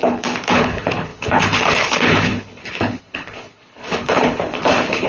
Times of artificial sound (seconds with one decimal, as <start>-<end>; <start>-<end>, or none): 0.0-5.1